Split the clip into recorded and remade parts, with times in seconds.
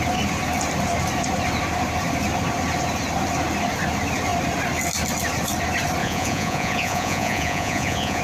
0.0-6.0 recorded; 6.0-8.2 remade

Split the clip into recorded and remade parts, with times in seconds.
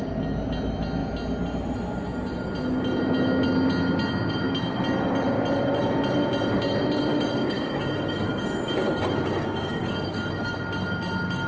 0.0-7.1 recorded; 7.1-10.5 remade; 10.5-11.5 recorded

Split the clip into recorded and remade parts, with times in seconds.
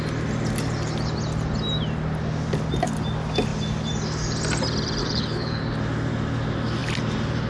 0.0-5.0 recorded; 5.0-5.6 remade; 5.6-7.5 recorded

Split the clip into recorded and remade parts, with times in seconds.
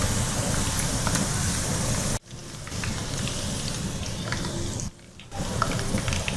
0.0-6.4 recorded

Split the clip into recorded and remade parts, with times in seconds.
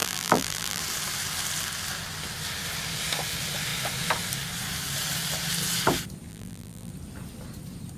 0.0-0.8 remade; 0.8-6.3 recorded; 6.3-6.9 remade; 6.9-8.0 recorded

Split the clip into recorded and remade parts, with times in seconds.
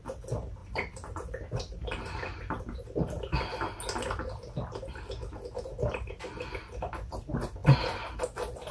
0.0-0.6 recorded; 0.6-2.4 remade; 2.4-8.7 recorded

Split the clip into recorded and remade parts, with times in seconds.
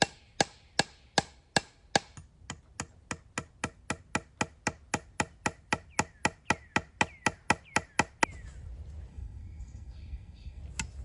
0.0-9.1 recorded; 9.1-10.6 remade; 10.6-11.0 recorded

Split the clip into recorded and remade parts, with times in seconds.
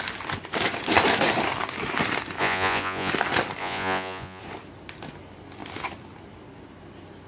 0.0-2.4 recorded; 2.4-3.1 remade; 3.1-3.6 recorded; 3.6-4.4 remade; 4.4-7.3 recorded